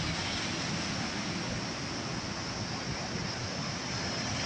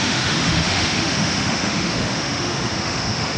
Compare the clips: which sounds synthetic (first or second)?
second